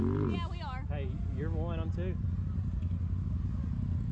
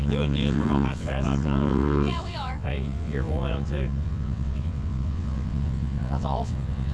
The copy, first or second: second